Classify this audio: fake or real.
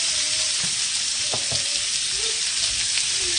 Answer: real